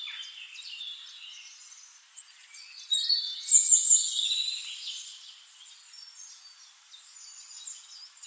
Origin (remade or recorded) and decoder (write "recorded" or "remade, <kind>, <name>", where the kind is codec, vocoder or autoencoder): recorded